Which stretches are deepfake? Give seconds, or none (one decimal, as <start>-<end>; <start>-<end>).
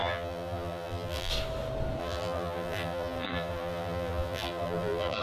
0.0-1.3; 2.0-5.2